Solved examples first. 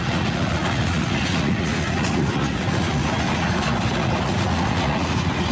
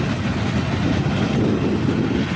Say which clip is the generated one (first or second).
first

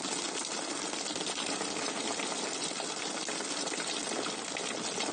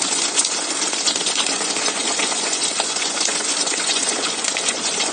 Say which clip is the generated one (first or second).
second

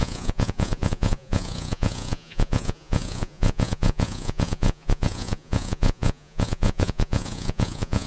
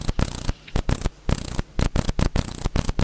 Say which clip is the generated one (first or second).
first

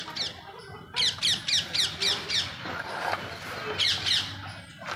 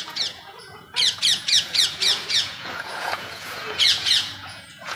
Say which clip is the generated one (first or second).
second